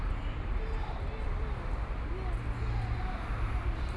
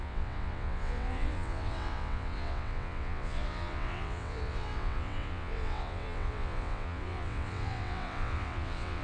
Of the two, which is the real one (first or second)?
first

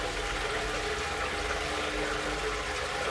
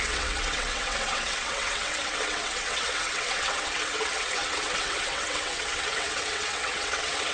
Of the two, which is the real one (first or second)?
first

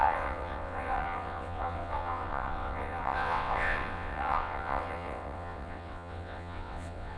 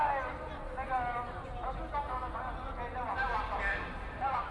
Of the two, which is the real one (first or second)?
second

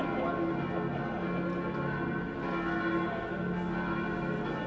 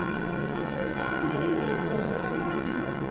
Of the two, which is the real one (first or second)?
first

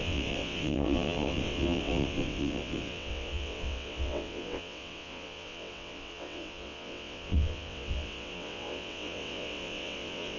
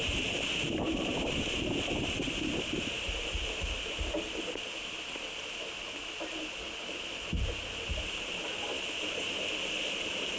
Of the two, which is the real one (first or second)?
second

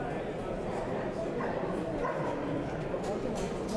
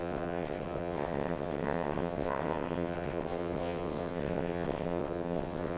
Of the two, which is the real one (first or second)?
first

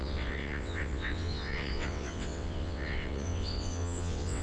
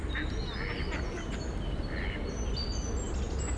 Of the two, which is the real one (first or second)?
second